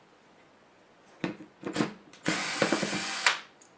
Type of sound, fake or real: fake